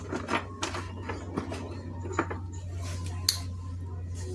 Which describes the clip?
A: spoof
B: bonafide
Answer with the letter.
B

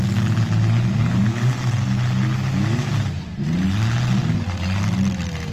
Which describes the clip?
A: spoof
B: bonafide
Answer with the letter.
B